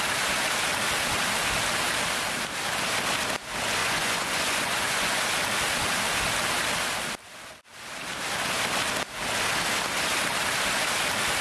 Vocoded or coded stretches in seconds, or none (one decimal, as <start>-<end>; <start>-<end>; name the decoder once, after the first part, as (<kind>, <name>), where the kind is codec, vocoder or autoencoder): 3.8-5.2 (vocoder, Vocos)